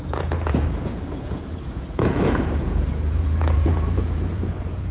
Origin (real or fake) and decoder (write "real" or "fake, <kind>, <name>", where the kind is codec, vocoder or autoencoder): fake, vocoder, Vocos